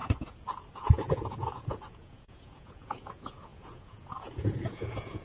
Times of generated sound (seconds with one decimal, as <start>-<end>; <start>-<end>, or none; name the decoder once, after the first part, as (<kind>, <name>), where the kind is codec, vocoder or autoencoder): 0.0-5.2 (vocoder, Vocos)